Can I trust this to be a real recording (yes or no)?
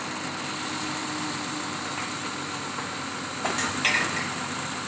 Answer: yes